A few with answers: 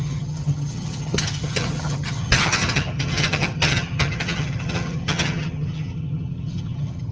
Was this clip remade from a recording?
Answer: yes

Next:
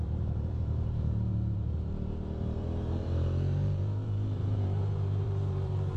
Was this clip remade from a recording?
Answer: yes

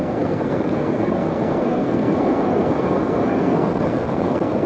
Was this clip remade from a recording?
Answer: yes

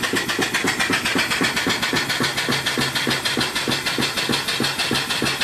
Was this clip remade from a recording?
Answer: no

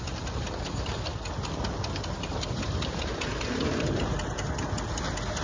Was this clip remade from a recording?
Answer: no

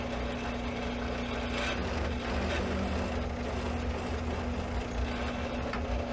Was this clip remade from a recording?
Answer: no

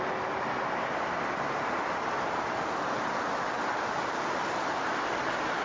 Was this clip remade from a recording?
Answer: no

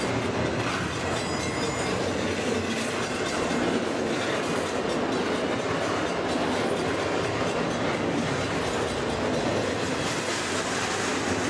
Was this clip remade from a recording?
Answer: no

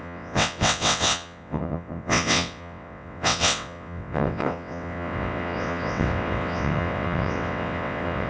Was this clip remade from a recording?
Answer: yes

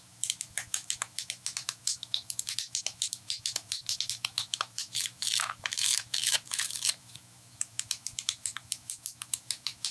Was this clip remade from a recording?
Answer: yes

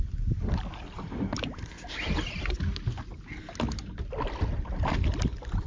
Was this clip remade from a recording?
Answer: no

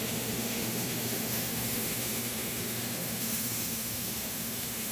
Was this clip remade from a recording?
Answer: yes